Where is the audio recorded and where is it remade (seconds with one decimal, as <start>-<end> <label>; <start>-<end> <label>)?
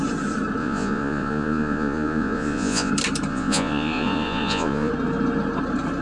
0.0-0.6 recorded; 0.6-2.9 remade; 2.9-3.3 recorded; 3.3-4.9 remade; 4.9-6.0 recorded